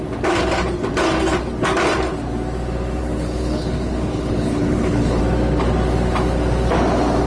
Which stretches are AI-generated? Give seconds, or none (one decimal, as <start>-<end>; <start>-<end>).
3.0-5.2